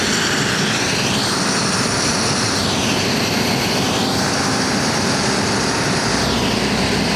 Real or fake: real